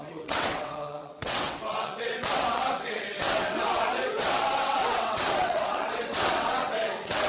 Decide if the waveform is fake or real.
fake